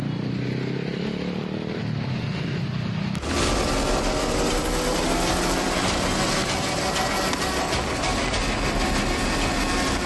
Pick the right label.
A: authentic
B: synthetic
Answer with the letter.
A